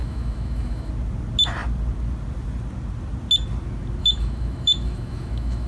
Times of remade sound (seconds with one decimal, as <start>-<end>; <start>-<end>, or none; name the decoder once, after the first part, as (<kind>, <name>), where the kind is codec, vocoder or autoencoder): 0.0-0.9 (autoencoder, DAC-VAE); 4.0-5.7